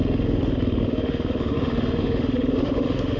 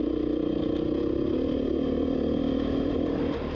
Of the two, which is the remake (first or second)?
first